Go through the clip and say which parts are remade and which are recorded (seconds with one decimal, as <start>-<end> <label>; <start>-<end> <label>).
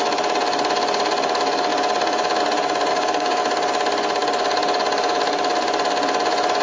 0.0-2.9 recorded; 2.9-3.4 remade; 3.4-6.6 recorded